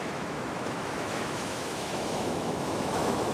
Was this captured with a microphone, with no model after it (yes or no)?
no